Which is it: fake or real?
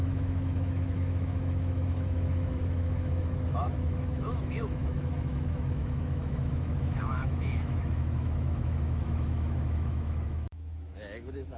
fake